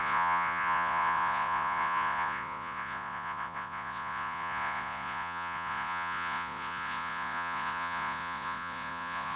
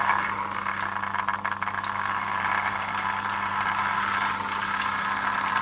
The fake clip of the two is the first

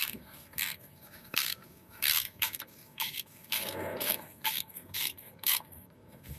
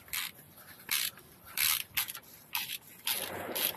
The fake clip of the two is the first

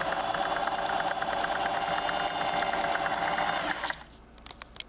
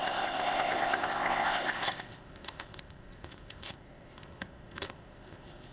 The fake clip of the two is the second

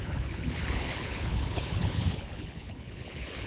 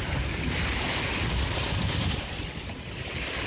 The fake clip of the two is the first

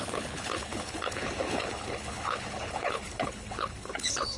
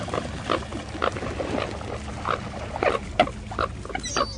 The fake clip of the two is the first